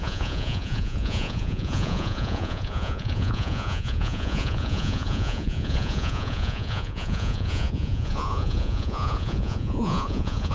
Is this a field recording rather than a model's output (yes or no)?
no